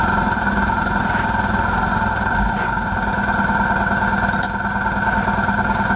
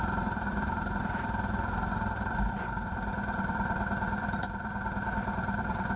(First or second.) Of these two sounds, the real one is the first